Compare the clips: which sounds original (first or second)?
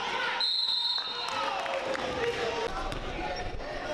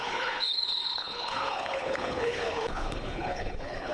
first